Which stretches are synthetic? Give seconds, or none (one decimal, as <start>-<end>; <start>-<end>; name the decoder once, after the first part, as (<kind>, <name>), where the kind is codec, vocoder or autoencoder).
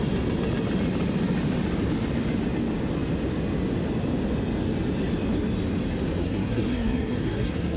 6.2-7.8 (codec, SNAC)